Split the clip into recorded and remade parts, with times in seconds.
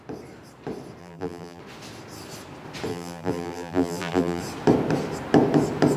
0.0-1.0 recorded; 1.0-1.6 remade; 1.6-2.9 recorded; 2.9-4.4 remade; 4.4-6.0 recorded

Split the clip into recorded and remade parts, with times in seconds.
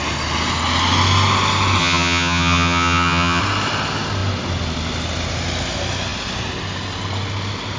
0.0-1.8 recorded; 1.8-3.4 remade; 3.4-7.8 recorded